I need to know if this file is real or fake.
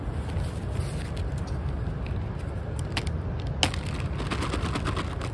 real